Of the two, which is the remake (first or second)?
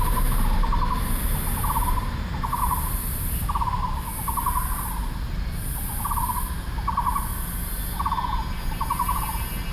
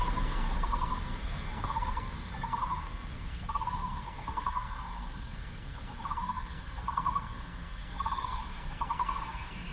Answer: second